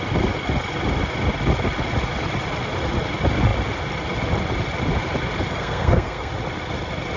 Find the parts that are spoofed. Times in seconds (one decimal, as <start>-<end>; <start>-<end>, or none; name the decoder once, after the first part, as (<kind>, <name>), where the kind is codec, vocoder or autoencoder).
5.5-6.3 (codec, SNAC)